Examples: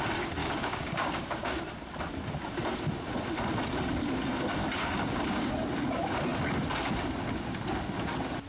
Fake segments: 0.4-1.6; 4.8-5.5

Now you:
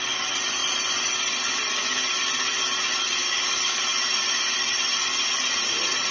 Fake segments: 3.2-3.8

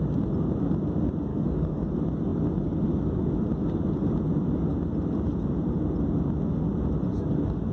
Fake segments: 1.3-1.9